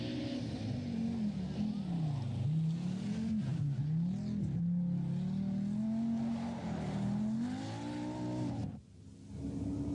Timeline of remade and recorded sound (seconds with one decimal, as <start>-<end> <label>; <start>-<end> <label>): 0.0-9.9 recorded